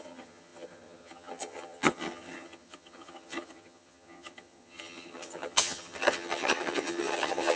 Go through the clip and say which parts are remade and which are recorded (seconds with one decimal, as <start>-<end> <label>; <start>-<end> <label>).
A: 0.0-7.6 remade